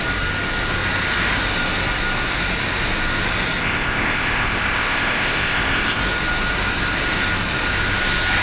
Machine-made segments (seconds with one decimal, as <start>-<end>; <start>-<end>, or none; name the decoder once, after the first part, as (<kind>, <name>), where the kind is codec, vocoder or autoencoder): 3.6-6.0 (codec, ZipCodec)